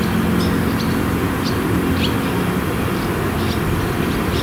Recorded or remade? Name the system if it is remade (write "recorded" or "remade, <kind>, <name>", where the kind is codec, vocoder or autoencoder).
recorded